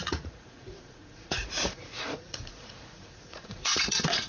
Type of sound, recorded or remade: remade